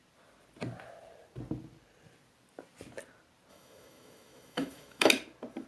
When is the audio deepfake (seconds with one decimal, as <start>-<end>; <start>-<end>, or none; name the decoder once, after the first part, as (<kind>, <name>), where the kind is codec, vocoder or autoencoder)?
3.5-5.1 (autoencoder, DAC-VAE)